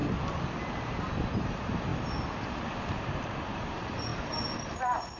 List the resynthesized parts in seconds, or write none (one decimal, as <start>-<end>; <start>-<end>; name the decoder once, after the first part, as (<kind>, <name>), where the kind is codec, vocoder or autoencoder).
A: none